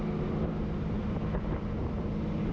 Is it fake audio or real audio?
fake